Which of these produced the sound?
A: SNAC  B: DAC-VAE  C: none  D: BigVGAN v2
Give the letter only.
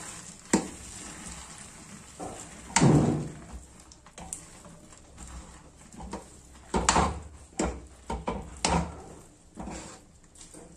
C